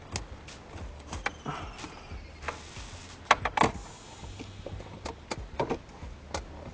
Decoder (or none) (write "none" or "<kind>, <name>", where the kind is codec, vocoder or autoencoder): none